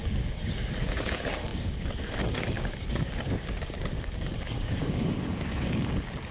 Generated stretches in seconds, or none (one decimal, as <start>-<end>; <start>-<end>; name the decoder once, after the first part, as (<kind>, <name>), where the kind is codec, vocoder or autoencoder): 0.0-6.3 (codec, DAC)